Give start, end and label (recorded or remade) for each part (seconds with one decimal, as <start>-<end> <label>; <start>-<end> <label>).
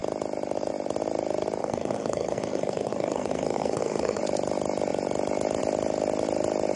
0.0-1.6 recorded; 1.6-4.2 remade; 4.2-6.8 recorded